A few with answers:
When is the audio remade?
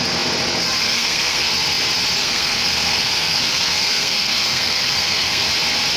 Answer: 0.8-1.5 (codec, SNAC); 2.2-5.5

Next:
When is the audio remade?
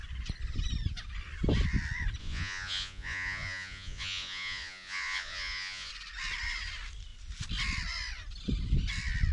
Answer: 2.2-5.9 (vocoder, Vocos)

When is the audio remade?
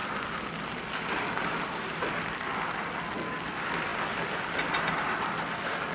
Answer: none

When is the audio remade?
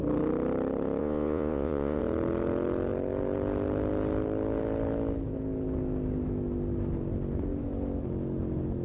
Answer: 1.0-2.0 (vocoder, Vocos)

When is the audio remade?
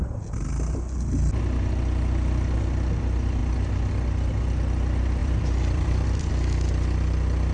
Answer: 5.2-6.3 (vocoder, BigVGAN v2)